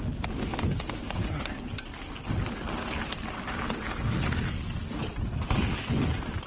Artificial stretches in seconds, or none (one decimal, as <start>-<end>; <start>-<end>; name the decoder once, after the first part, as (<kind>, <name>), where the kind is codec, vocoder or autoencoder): none